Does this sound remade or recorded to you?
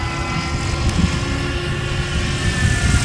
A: recorded